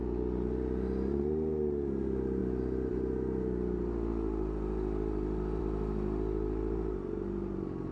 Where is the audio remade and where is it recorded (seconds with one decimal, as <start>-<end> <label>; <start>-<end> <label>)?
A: 0.0-7.9 recorded